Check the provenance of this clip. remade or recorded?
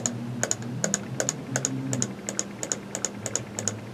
recorded